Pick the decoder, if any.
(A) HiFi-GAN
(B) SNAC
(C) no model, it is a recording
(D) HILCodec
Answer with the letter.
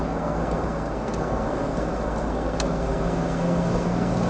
B